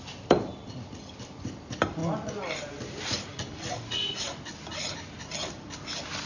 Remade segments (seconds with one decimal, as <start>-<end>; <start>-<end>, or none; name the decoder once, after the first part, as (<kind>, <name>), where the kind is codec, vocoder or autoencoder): 0.0-2.0 (vocoder, BigVGAN v2); 2.6-3.3; 5.3-6.3